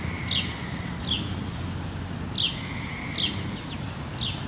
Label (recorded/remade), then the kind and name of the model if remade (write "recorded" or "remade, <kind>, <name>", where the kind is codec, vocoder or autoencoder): recorded